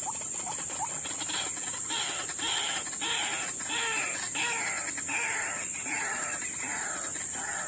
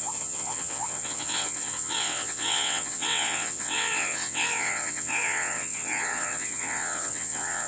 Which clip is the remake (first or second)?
second